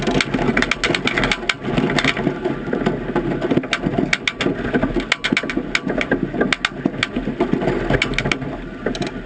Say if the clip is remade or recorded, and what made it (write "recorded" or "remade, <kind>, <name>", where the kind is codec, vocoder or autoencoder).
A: recorded